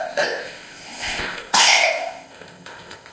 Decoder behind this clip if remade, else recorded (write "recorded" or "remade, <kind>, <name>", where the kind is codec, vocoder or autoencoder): remade, codec, ZipCodec